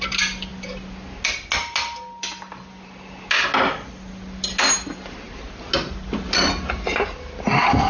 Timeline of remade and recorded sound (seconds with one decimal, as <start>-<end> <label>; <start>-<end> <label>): 0.0-7.9 recorded